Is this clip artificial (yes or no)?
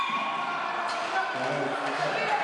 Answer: yes